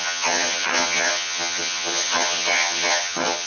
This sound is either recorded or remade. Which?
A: remade